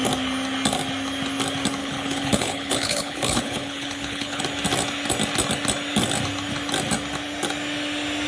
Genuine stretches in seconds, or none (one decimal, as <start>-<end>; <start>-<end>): 0.0-1.8; 4.4-8.3